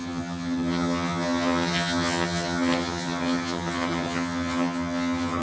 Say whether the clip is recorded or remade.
remade